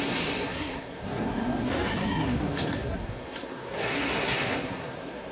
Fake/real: fake